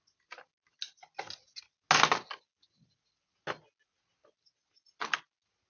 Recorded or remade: recorded